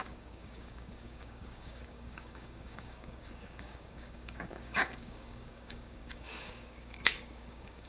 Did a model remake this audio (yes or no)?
yes